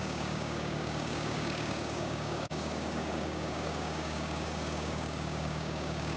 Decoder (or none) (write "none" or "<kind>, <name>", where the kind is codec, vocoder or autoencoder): codec, DAC